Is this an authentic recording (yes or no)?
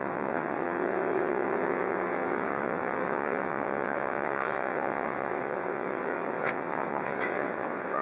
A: no